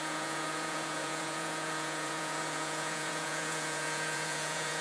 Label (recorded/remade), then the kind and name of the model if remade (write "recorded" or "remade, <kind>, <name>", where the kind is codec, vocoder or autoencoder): remade, vocoder, Vocos